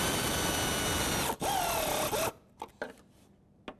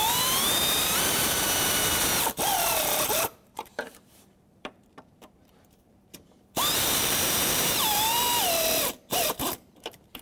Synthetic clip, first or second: second